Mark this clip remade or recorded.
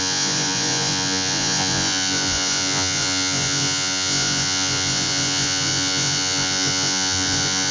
remade